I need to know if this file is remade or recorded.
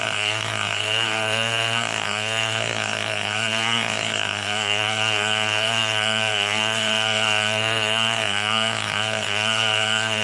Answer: remade